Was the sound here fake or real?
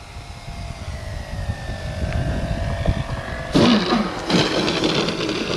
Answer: real